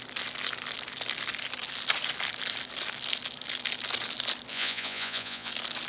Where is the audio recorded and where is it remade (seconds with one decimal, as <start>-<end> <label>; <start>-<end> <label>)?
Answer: 0.0-4.5 recorded; 4.5-5.5 remade; 5.5-5.9 recorded